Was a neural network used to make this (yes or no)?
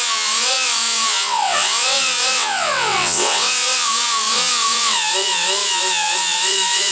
yes